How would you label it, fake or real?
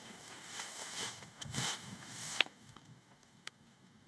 fake